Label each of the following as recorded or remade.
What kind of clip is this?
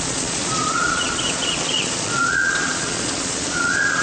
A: remade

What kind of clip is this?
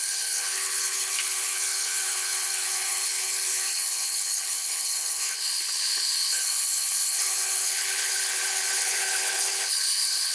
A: remade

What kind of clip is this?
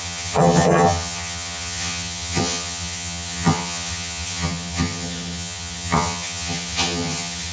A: remade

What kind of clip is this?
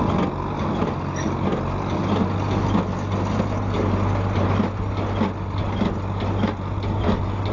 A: recorded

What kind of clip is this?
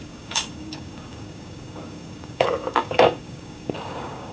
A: remade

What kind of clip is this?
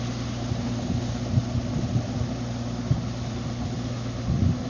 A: recorded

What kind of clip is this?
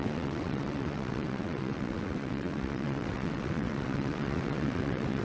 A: remade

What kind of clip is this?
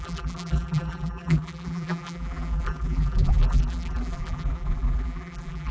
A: remade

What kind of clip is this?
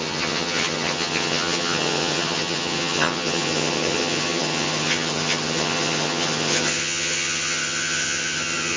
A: remade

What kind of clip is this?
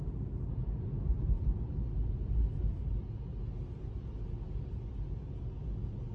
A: recorded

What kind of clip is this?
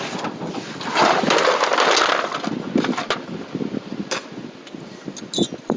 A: recorded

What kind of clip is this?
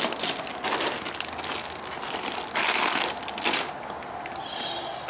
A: recorded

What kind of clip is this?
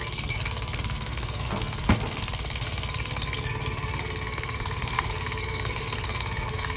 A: remade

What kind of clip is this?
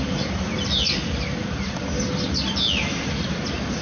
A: recorded